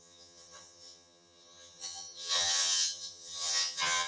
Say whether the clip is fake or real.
fake